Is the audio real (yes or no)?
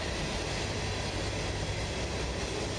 yes